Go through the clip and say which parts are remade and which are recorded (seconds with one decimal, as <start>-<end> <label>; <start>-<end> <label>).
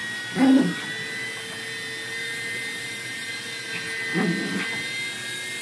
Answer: 0.0-2.2 recorded; 2.2-3.3 remade; 3.3-5.6 recorded